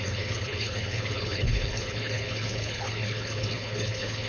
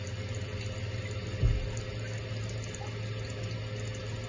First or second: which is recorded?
second